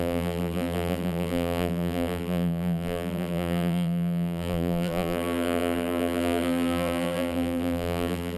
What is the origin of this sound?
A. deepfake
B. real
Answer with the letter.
A